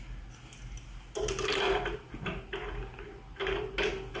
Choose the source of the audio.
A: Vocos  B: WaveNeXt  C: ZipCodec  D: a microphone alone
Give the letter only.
D